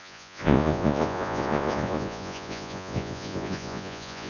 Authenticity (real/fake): fake